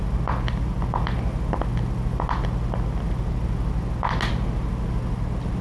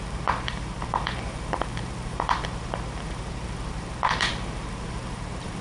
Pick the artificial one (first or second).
second